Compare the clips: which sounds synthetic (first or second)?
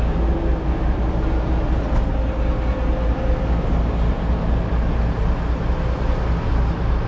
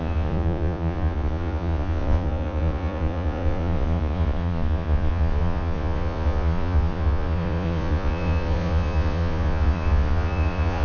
second